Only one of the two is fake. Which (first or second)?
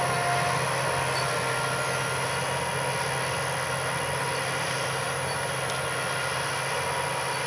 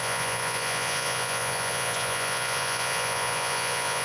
second